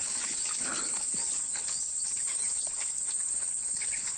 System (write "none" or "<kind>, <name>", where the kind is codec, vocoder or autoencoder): codec, HILCodec